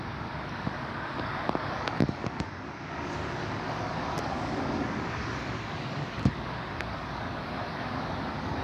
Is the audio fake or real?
fake